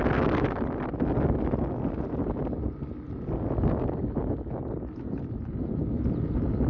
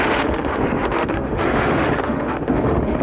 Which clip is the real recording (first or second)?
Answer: first